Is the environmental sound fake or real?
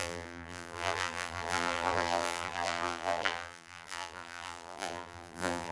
fake